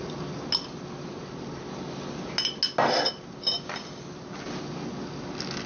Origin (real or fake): real